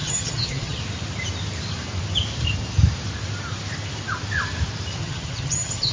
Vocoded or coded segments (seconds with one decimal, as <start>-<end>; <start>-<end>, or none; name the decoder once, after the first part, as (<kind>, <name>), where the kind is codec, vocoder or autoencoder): 0.0-0.8 (vocoder, HiFi-GAN); 5.0-5.9